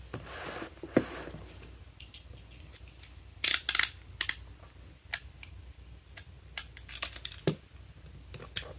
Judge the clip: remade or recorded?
recorded